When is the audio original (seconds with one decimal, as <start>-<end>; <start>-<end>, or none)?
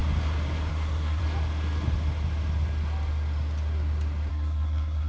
0.0-0.7; 1.2-4.3